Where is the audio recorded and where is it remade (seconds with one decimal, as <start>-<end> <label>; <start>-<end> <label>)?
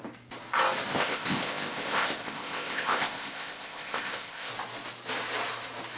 0.0-0.9 recorded; 0.9-4.5 remade; 4.5-6.0 recorded